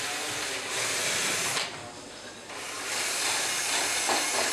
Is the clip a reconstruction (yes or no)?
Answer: no